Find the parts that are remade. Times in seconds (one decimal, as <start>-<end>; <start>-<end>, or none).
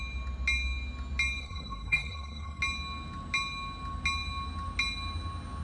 1.4-2.6